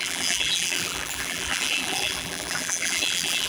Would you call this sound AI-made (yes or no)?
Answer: yes